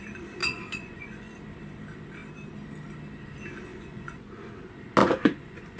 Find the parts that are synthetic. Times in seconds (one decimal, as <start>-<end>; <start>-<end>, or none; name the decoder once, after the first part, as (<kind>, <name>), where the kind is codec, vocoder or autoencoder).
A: 0.4-1.3 (vocoder, Vocos); 3.7-4.5; 5.0-5.8